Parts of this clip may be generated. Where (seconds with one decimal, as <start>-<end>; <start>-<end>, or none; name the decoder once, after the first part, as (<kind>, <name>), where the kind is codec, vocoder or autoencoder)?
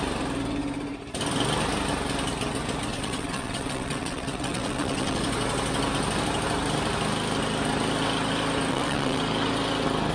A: 2.9-5.2 (vocoder, WaveNeXt); 8.7-9.2